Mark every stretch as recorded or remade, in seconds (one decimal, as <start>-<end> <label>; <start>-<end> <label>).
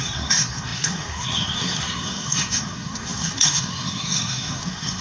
0.0-5.0 remade